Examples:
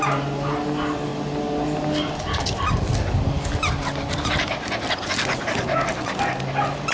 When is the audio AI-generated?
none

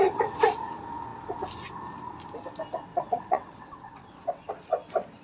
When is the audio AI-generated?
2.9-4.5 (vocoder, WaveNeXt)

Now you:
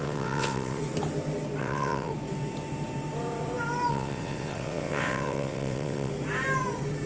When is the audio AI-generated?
0.0-0.8 (vocoder, WaveNeXt); 1.6-2.1; 3.9-6.1

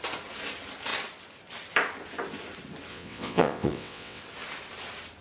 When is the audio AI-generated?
2.9-4.2 (vocoder, WaveNeXt)

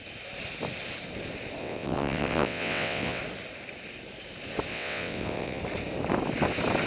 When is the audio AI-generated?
1.6-3.2 (vocoder, WaveNeXt); 4.7-5.6